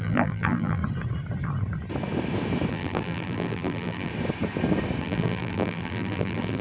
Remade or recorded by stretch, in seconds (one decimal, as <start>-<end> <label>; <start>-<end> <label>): 0.0-0.8 remade; 0.8-2.7 recorded; 2.7-4.1 remade; 4.1-5.0 recorded; 5.0-6.6 remade

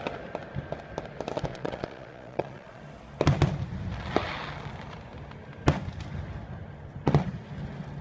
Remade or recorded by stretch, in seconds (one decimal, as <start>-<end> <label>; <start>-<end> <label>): 0.0-1.5 recorded; 1.5-2.8 remade; 2.8-8.0 recorded

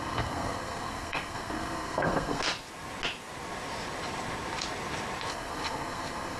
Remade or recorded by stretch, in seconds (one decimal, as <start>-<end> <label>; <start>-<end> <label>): 0.0-2.4 remade; 2.4-5.3 recorded; 5.3-6.4 remade

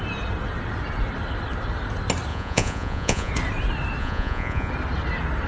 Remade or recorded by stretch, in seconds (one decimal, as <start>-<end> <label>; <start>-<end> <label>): 0.0-2.3 recorded; 2.3-3.3 remade; 3.3-4.0 recorded; 4.0-4.7 remade; 4.7-5.5 recorded

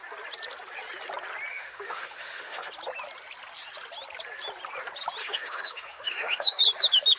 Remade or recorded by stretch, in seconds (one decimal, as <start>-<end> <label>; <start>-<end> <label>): 0.0-1.5 recorded; 1.5-2.7 remade; 2.7-5.2 recorded; 5.2-6.6 remade; 6.6-7.2 recorded

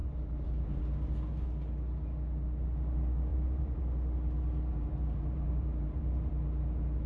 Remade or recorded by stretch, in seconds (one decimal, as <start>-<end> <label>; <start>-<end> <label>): 0.0-0.8 remade; 0.8-3.3 recorded; 3.3-3.8 remade; 3.8-4.7 recorded; 4.7-6.3 remade; 6.3-7.1 recorded

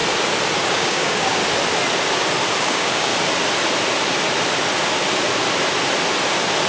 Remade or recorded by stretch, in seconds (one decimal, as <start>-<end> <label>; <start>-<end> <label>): 0.0-0.7 recorded; 0.7-1.4 remade; 1.4-2.6 recorded; 2.6-3.1 remade; 3.1-6.7 recorded

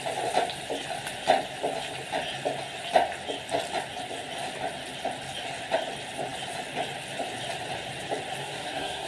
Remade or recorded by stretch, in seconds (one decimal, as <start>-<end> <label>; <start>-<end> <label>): 0.0-8.4 recorded; 8.4-9.1 remade